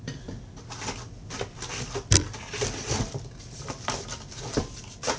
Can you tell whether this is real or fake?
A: real